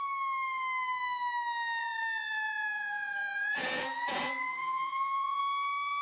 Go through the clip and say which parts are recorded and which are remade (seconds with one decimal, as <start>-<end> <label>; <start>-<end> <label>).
0.0-1.8 recorded; 1.8-5.4 remade; 5.4-6.0 recorded

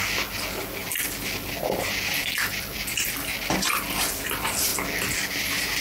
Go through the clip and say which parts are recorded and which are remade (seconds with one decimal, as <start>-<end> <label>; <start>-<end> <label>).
0.0-5.8 recorded

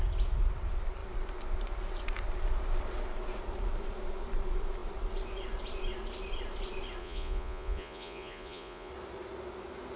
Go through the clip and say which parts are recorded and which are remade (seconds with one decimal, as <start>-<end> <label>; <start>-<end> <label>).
0.0-7.0 recorded; 7.0-8.9 remade; 8.9-10.0 recorded

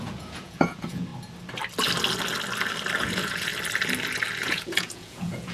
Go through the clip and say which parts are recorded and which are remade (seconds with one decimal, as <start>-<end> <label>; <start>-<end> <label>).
0.0-1.1 remade; 1.1-3.0 recorded; 3.0-3.5 remade; 3.5-4.4 recorded; 4.4-5.5 remade

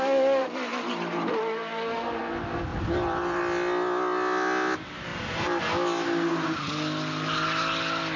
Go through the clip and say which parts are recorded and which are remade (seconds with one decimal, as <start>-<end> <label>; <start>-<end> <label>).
0.0-0.4 recorded; 0.4-2.2 remade; 2.2-2.7 recorded; 2.7-3.4 remade; 3.4-5.1 recorded; 5.1-5.6 remade; 5.6-8.2 recorded

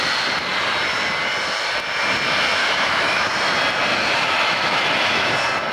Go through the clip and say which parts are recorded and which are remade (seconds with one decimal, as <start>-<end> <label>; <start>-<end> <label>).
0.0-2.6 recorded; 2.6-3.3 remade; 3.3-3.9 recorded; 3.9-5.3 remade; 5.3-5.7 recorded